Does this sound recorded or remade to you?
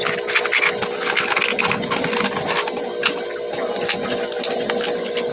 recorded